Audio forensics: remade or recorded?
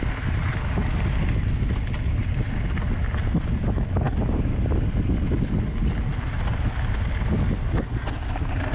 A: recorded